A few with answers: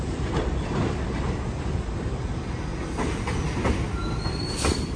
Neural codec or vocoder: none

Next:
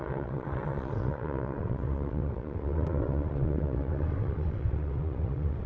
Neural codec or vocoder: vocoder, WaveNeXt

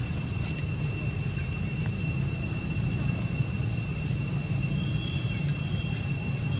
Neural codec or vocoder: none